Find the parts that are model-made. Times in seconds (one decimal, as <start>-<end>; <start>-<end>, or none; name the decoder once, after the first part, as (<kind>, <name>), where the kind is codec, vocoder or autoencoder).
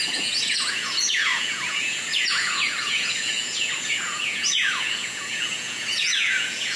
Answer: 0.0-6.8 (vocoder, Vocos)